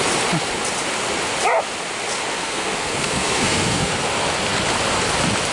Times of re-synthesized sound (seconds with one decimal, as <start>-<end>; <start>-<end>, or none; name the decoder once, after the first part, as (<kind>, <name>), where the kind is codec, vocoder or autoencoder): 2.3-3.9 (codec, SNAC)